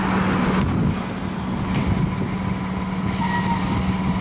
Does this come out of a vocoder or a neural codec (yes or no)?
no